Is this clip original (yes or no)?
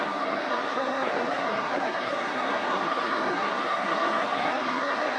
no